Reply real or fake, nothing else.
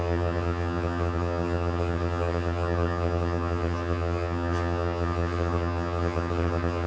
fake